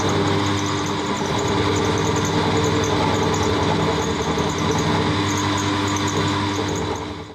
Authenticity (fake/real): real